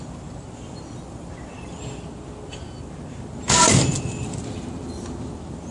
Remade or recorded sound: recorded